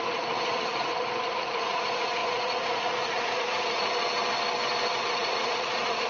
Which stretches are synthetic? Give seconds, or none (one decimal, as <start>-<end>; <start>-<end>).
0.0-3.9; 5.1-6.1